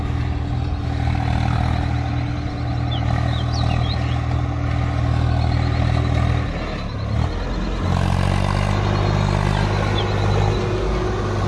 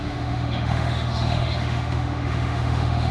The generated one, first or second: second